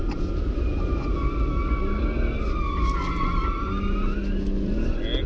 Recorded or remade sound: recorded